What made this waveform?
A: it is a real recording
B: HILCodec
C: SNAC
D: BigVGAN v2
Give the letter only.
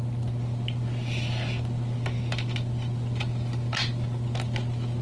A